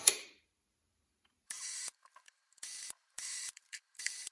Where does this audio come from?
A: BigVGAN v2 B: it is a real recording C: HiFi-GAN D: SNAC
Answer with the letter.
A